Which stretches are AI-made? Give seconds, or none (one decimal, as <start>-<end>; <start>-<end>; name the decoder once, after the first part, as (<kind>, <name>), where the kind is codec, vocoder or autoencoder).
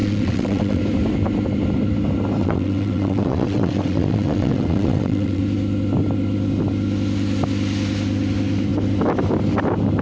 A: 0.0-0.8 (vocoder, WaveNeXt); 2.4-5.4